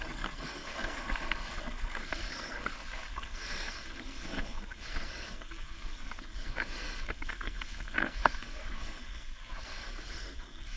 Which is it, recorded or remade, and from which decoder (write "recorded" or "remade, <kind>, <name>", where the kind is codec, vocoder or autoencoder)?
remade, codec, SNAC